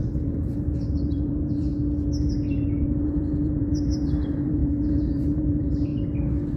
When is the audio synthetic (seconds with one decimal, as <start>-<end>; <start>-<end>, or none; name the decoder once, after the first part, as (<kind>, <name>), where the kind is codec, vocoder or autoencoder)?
0.0-1.7 (vocoder, BigVGAN v2); 2.5-5.9